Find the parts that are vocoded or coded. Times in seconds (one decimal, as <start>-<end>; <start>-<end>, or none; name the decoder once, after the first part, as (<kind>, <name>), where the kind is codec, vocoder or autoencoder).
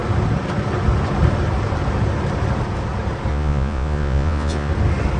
3.3-4.7 (vocoder, Vocos)